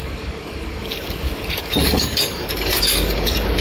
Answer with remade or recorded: remade